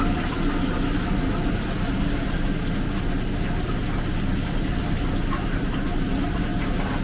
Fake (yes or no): no